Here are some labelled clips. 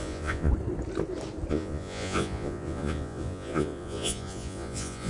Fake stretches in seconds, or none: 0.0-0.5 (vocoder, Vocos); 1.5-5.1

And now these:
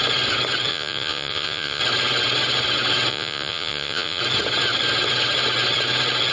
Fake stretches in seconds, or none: 0.7-1.8 (vocoder, Vocos); 3.1-4.2

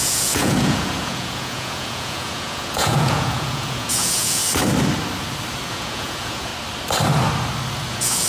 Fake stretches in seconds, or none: 0.0-4.4 (vocoder, Vocos); 5.7-6.5; 7.9-8.3

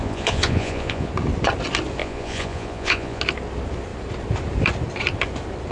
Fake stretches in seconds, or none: 0.0-1.1 (vocoder, Vocos); 2.0-3.2

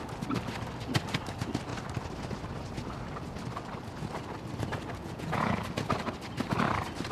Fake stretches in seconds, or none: 5.0-5.6 (vocoder, Vocos)

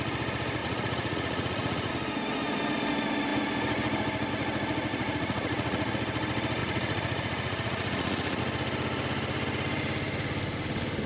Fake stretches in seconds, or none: 0.6-1.9 (vocoder, Vocos); 4.9-5.9; 6.6-8.4

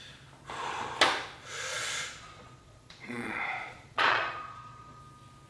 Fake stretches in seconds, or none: 1.7-5.0 (vocoder, Vocos)

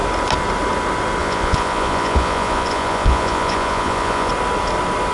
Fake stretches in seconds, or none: 1.2-4.3 (vocoder, Vocos)